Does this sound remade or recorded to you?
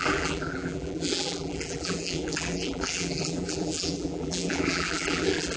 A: remade